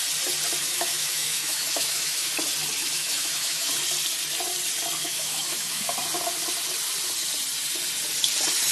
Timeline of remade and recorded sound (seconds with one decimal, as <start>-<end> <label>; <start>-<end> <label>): 0.0-0.6 recorded; 0.6-2.3 remade; 2.3-2.8 recorded; 2.8-3.7 remade; 3.7-5.0 recorded; 5.0-5.8 remade; 5.8-8.7 recorded